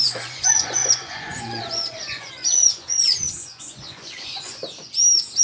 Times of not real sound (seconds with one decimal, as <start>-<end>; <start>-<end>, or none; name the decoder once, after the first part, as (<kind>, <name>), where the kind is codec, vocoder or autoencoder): 0.0-4.6 (vocoder, Vocos)